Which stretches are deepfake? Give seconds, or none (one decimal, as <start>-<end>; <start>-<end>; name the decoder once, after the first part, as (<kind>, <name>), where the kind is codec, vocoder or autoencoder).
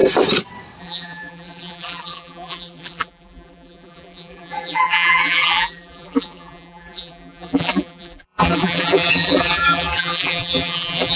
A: 0.8-11.2 (vocoder, BigVGAN v2)